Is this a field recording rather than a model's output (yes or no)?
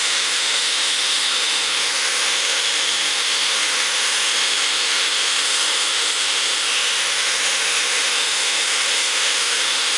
no